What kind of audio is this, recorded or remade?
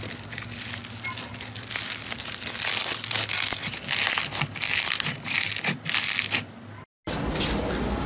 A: recorded